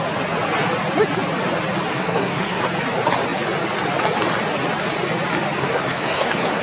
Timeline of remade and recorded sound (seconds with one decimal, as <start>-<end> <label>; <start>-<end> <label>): 0.0-1.9 recorded; 1.9-2.6 remade; 2.6-5.6 recorded; 5.6-6.6 remade

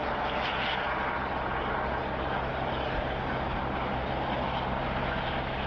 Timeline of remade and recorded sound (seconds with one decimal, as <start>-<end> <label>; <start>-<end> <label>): 0.0-5.7 recorded

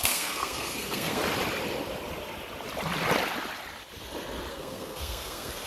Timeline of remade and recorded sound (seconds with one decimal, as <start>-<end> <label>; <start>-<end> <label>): 0.0-1.2 remade; 1.2-4.5 recorded; 4.5-5.7 remade

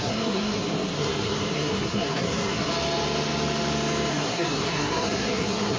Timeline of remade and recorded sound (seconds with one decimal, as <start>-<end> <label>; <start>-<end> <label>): 0.0-2.7 remade; 2.7-4.1 recorded; 4.1-5.8 remade

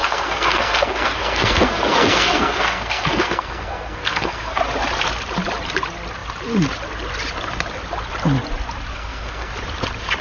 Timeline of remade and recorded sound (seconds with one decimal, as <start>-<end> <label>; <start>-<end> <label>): 0.0-4.6 remade; 4.6-8.9 recorded; 8.9-9.5 remade; 9.5-10.2 recorded